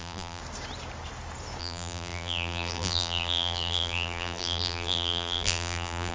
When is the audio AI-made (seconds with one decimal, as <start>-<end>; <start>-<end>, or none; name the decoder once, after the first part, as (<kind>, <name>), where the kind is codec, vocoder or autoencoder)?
0.0-0.4 (vocoder, BigVGAN v2); 1.6-6.1